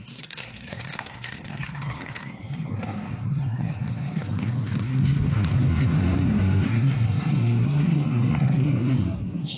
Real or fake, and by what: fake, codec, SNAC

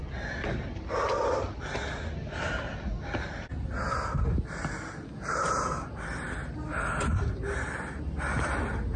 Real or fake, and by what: real